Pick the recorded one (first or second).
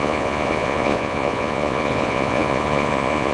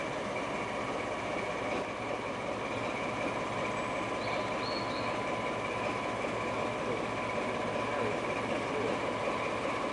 second